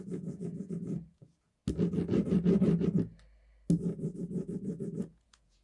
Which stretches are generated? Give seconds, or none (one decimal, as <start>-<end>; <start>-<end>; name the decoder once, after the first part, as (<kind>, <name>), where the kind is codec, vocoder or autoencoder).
0.0-1.6 (vocoder, Vocos); 5.0-5.6